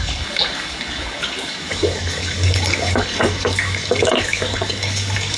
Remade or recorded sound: remade